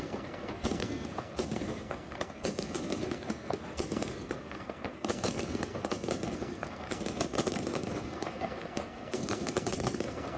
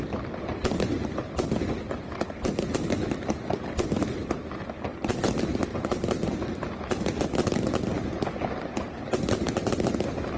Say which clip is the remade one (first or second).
first